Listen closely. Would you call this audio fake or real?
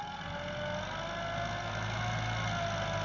real